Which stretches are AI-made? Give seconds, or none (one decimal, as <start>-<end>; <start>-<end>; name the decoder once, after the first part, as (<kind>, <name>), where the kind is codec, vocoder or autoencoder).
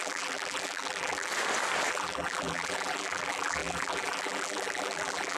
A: 0.0-1.3 (vocoder, BigVGAN v2); 1.9-5.4